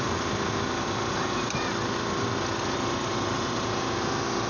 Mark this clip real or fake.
real